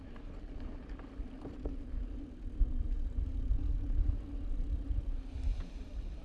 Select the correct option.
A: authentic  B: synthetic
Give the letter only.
A